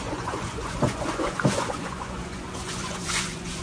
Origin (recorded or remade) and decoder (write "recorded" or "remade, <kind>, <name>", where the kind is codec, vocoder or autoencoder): remade, vocoder, Vocos